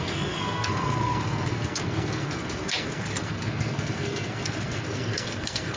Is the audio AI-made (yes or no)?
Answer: yes